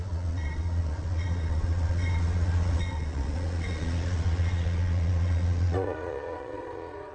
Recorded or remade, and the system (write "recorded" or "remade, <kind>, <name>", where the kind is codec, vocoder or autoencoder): remade, vocoder, Vocos